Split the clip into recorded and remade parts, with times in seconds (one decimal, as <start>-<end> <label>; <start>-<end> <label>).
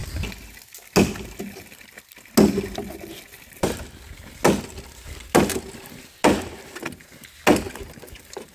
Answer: 0.0-8.5 recorded